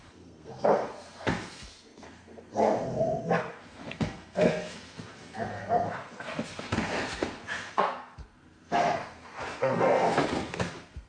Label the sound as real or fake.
fake